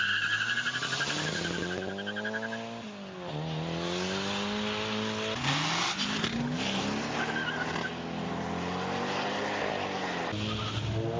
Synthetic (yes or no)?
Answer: no